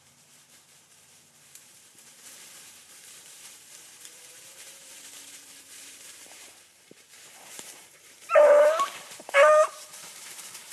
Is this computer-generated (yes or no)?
yes